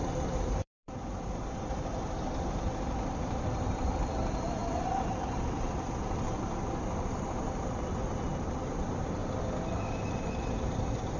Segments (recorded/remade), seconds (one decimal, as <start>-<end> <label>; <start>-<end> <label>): 0.0-9.2 remade; 9.2-9.9 recorded; 9.9-11.2 remade